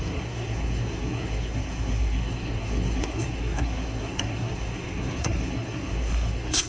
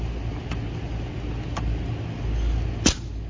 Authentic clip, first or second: second